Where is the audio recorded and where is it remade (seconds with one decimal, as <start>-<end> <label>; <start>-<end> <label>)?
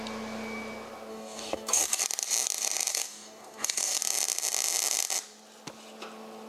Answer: 0.0-1.1 recorded; 1.1-2.0 remade; 2.0-2.9 recorded; 2.9-4.0 remade; 4.0-6.5 recorded